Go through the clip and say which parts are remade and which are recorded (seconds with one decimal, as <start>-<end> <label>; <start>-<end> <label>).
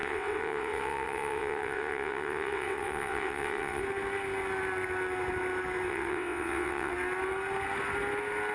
0.0-3.8 remade; 3.8-5.9 recorded; 5.9-6.9 remade; 6.9-8.5 recorded